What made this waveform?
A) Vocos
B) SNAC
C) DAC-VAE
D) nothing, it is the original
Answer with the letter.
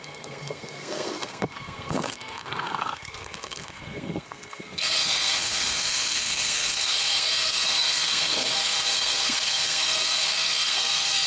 B